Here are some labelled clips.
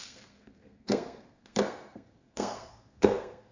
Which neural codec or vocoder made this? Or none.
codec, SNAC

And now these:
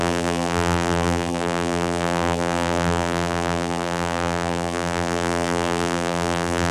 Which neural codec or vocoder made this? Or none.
vocoder, BigVGAN v2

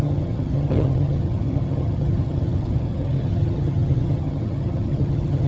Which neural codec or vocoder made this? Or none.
vocoder, HiFi-GAN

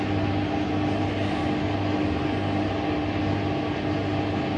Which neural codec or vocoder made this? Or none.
none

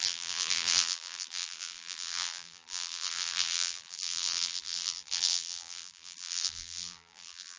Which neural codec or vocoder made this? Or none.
vocoder, BigVGAN v2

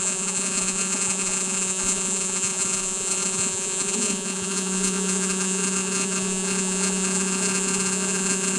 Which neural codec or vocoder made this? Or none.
vocoder, Vocos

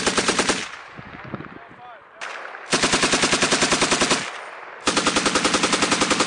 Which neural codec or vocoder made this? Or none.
none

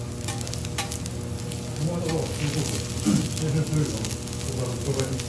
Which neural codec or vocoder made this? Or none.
none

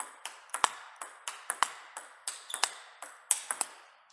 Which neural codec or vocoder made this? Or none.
none